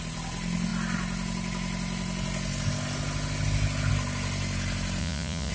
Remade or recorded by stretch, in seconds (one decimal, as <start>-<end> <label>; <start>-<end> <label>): 0.0-5.0 recorded; 5.0-5.5 remade